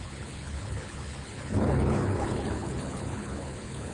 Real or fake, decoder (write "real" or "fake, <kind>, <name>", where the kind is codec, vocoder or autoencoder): fake, codec, HILCodec